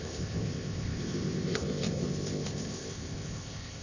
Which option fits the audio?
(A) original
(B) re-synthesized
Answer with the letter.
B